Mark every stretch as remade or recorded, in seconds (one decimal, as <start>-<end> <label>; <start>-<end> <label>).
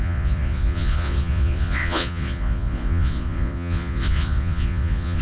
0.0-5.2 remade